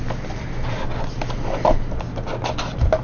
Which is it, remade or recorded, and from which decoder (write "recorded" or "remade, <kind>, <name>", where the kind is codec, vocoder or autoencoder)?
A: recorded